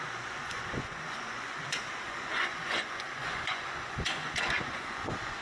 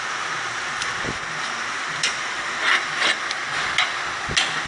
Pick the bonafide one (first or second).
second